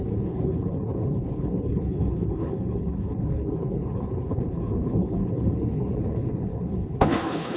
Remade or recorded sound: remade